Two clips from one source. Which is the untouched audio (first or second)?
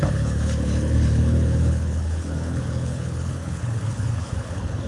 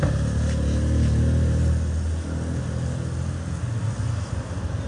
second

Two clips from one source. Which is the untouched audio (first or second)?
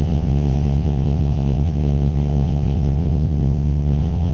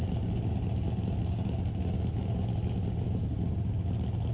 second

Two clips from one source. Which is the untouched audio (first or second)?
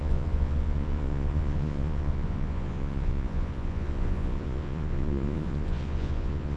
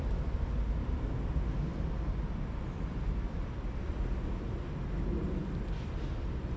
second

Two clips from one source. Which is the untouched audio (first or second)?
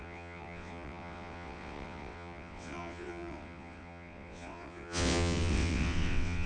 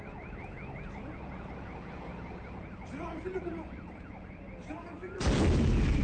second